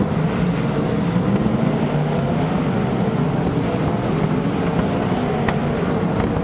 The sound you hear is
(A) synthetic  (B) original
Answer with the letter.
B